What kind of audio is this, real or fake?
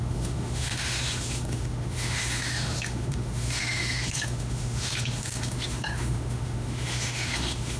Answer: fake